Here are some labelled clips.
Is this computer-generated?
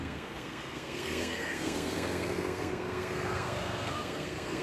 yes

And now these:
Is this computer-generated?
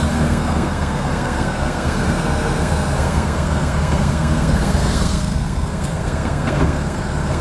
yes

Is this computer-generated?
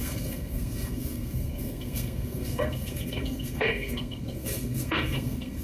yes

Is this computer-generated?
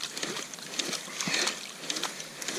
no